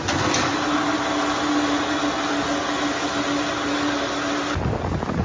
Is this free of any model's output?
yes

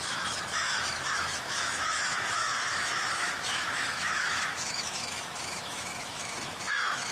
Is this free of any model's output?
no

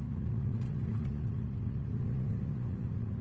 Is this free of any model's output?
no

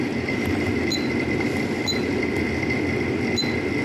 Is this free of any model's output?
no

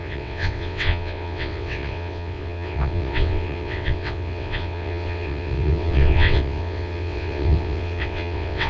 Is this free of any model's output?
no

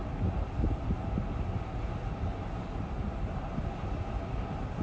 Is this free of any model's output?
yes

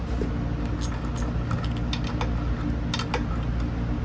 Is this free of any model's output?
yes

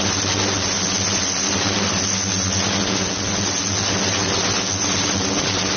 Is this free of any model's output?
yes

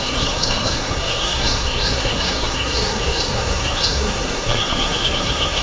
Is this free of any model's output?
no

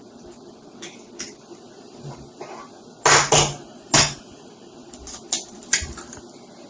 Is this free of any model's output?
yes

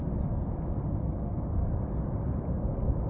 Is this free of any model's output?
yes